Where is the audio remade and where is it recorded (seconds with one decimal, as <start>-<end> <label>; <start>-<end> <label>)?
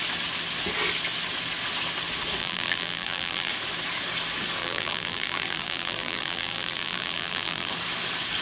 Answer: 0.0-2.4 recorded; 2.4-3.5 remade; 3.5-4.6 recorded; 4.6-7.7 remade; 7.7-8.4 recorded